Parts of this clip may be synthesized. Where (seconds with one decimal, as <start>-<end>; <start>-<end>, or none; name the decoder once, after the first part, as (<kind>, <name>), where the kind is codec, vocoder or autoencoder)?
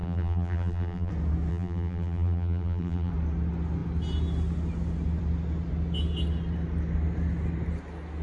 0.0-1.1 (vocoder, BigVGAN v2); 1.5-3.1